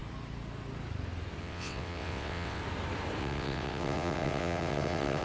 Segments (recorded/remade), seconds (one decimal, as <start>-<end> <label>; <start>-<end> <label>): 0.0-1.4 recorded; 1.4-2.6 remade; 2.6-3.2 recorded; 3.2-5.2 remade